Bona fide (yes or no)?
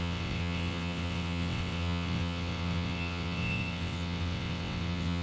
no